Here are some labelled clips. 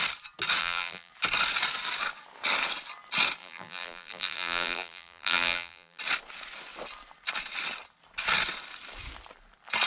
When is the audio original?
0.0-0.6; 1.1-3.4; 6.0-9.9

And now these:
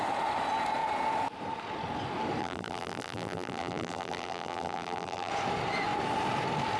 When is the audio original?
0.0-2.4; 5.3-6.8

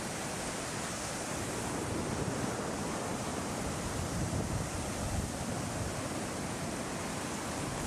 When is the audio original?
0.0-3.3; 5.5-7.9

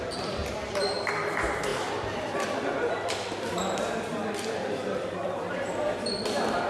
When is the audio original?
0.0-1.7; 2.9-4.1; 5.7-6.7